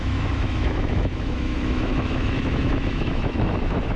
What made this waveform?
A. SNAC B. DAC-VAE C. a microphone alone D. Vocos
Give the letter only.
B